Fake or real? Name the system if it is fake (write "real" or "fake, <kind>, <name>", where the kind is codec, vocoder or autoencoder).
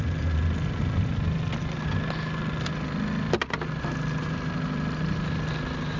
real